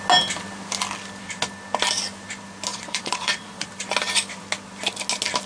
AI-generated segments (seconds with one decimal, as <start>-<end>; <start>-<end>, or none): 2.7-3.7